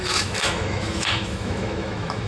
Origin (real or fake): fake